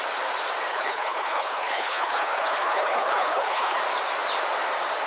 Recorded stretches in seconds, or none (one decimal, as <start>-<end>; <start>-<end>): 0.0-0.7; 3.8-5.1